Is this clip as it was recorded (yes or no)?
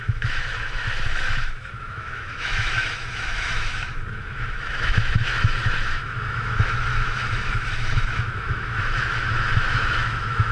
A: no